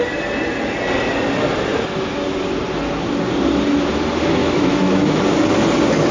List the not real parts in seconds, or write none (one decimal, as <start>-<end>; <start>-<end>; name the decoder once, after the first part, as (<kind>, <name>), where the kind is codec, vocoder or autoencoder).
4.4-5.2 (autoencoder, DAC-VAE)